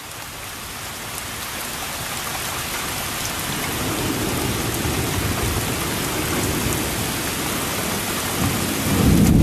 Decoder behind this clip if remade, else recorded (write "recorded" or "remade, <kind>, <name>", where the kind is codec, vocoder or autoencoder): recorded